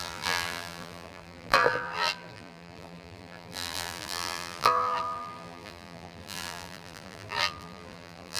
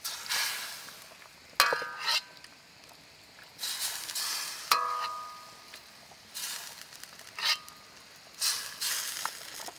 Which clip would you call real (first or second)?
second